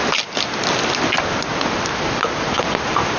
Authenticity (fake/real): real